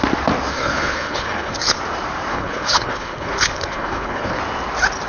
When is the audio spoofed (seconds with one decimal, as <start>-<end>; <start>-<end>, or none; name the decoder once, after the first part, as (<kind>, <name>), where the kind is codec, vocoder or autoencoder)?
0.5-1.8 (codec, HILCodec); 2.3-4.4